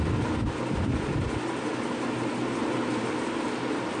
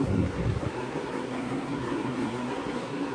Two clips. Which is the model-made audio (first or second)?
second